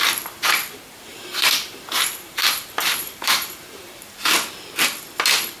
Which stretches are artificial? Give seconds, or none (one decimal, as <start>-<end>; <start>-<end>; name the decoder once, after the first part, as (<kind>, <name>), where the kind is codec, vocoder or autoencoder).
1.1-4.5 (vocoder, BigVGAN v2)